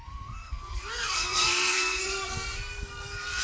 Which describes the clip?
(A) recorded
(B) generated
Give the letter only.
B